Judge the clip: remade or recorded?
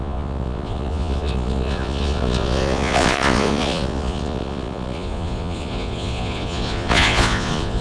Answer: remade